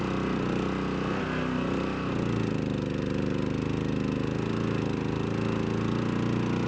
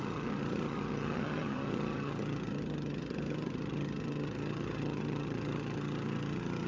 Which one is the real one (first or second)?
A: first